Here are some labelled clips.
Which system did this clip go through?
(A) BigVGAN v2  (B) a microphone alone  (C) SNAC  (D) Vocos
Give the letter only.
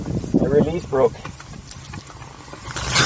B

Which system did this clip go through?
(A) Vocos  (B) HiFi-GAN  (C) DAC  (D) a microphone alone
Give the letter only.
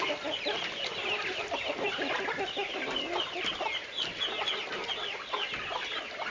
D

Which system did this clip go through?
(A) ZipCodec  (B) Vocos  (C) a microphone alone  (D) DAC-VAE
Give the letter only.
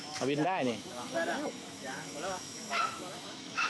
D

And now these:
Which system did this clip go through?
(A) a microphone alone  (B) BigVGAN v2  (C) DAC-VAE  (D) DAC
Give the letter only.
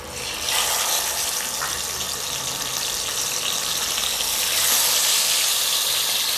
A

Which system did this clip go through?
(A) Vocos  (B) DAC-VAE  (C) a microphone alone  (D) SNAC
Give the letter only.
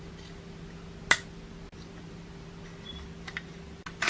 C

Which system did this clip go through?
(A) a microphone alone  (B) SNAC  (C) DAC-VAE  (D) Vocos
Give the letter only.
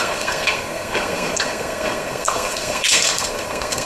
B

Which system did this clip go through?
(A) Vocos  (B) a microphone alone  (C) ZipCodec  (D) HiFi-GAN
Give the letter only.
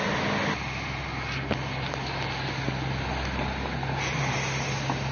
B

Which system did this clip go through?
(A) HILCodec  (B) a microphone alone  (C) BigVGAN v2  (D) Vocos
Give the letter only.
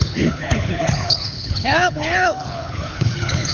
A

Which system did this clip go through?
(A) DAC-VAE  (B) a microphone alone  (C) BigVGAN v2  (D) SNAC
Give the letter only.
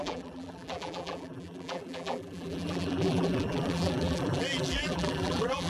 C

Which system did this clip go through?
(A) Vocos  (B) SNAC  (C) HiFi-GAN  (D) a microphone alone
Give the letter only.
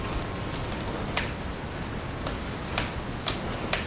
D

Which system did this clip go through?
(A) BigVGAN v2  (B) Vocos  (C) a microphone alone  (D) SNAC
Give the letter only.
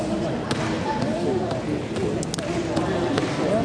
C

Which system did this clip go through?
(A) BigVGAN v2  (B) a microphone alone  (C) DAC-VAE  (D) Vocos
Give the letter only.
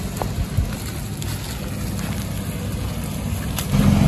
B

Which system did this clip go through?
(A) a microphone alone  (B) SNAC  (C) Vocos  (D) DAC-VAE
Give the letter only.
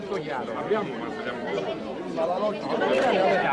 A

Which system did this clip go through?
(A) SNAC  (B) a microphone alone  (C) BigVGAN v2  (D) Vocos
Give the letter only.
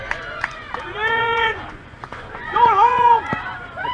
D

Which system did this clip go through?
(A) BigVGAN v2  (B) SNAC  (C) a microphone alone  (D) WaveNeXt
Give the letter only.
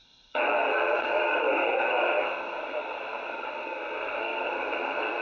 B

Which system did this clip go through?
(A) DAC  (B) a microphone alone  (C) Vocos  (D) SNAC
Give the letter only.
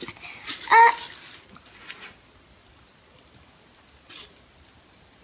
B